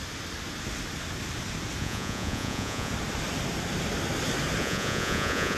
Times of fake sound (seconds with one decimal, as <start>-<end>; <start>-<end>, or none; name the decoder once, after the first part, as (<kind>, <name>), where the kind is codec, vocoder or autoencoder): 1.8-2.9 (vocoder, Vocos); 4.6-5.6